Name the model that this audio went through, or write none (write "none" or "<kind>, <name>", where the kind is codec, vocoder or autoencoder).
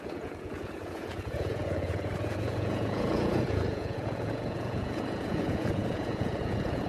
vocoder, Vocos